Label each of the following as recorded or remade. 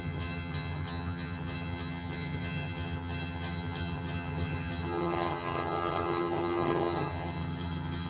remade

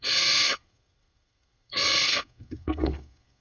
remade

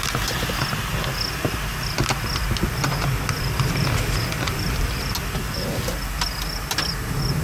recorded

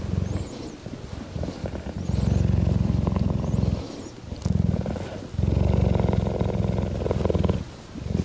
recorded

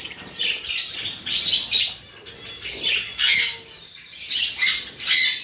recorded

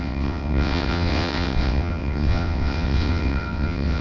remade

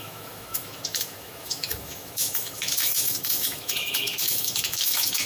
remade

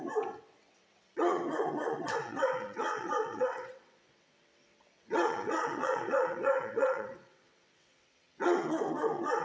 remade